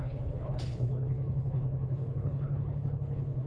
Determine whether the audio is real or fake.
fake